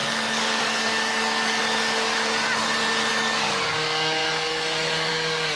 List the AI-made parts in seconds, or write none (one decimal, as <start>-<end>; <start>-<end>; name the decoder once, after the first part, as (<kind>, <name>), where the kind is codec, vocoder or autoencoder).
0.0-1.6 (codec, DAC); 3.1-5.6